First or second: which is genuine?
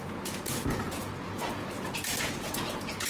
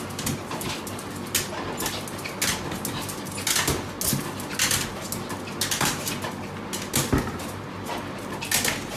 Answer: second